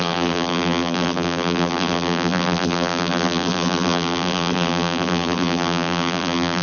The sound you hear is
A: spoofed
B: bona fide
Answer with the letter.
A